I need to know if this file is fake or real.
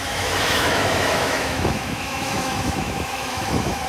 fake